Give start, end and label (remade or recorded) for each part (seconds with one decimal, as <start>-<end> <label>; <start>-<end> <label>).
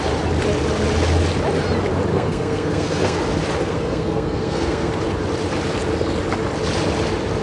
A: 0.0-2.1 recorded; 2.1-3.2 remade; 3.2-3.6 recorded; 3.6-4.9 remade; 4.9-7.4 recorded